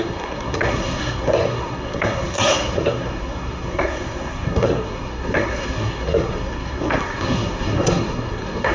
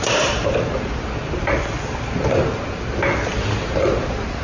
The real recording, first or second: second